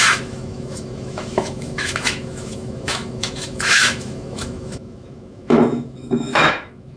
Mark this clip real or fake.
fake